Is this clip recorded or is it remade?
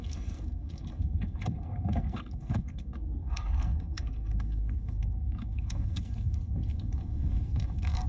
remade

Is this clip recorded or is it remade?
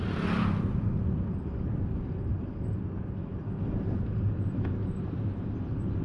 recorded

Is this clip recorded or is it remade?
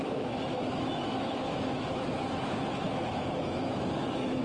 remade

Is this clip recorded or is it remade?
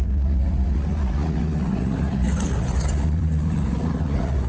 remade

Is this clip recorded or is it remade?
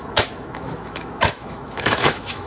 remade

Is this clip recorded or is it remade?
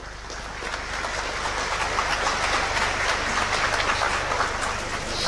recorded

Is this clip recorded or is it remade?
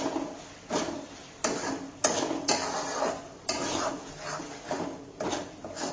recorded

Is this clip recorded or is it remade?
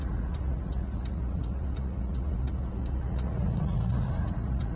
remade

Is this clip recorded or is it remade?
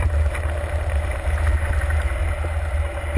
recorded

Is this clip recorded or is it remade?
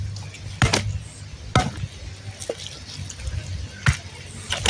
recorded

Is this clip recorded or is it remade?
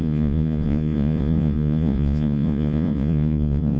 remade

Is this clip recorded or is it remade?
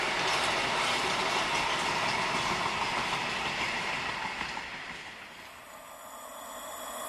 recorded